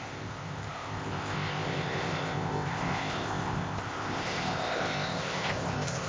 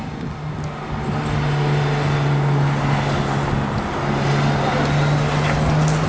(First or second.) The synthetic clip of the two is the first